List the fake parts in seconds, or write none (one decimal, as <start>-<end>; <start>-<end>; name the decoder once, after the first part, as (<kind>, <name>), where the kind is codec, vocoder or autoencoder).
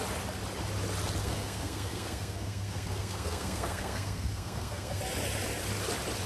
1.2-5.0 (codec, SNAC)